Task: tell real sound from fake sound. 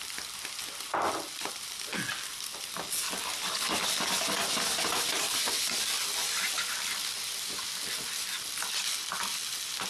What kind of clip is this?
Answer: real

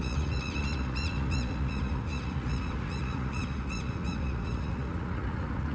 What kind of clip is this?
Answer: fake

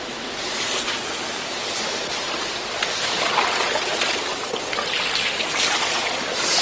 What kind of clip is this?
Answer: real